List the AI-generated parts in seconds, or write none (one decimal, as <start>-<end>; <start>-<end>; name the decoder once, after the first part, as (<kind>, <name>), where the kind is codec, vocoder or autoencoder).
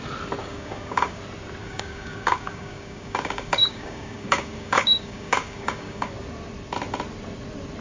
0.4-1.2 (codec, DAC); 1.6-6.1